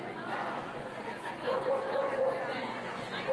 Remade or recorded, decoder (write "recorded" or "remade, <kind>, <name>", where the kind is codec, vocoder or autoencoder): remade, vocoder, Vocos